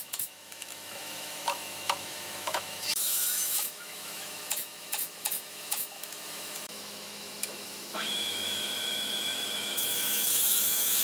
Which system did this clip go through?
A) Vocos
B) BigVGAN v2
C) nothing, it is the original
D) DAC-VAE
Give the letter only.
D